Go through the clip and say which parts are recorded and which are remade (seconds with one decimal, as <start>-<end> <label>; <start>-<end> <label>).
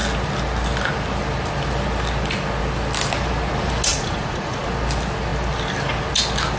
0.0-3.9 recorded; 3.9-4.6 remade; 4.6-6.6 recorded